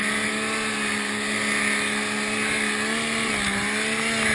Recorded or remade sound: recorded